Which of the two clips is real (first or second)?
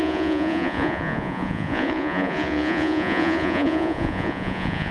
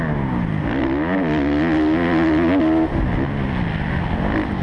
second